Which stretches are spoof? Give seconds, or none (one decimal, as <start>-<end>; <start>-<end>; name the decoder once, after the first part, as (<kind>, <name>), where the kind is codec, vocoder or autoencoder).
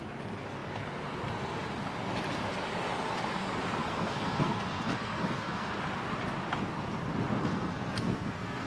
3.8-5.7 (codec, SNAC); 7.4-8.7